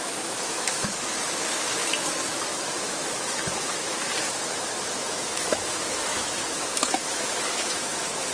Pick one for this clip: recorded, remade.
remade